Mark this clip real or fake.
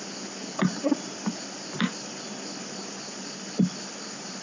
real